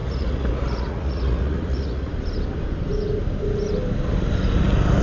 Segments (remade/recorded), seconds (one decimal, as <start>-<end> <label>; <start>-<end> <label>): 0.0-2.1 remade; 2.1-5.0 recorded